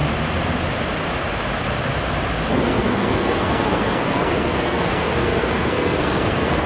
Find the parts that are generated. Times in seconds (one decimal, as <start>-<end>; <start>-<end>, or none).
2.5-6.7